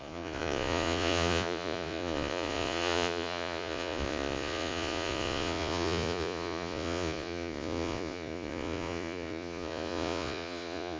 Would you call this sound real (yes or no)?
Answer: no